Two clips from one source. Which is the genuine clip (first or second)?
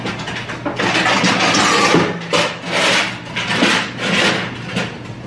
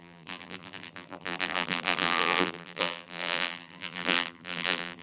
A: first